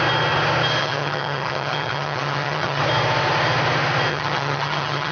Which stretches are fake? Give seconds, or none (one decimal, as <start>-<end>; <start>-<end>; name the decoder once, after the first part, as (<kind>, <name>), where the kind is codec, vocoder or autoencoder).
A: 0.8-2.8 (vocoder, HiFi-GAN); 4.1-5.1